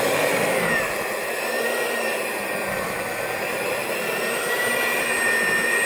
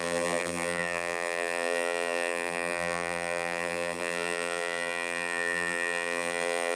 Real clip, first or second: first